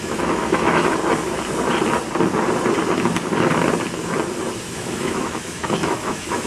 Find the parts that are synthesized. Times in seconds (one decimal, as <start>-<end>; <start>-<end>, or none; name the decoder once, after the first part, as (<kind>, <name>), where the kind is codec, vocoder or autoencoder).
0.0-0.9 (autoencoder, DAC-VAE); 4.6-6.5